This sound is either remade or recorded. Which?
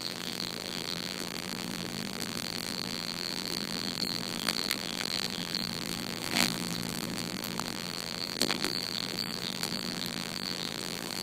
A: remade